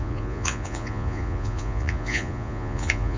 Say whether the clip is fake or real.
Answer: fake